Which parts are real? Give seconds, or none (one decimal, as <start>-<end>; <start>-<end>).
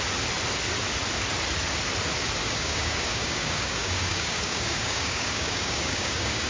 0.0-2.4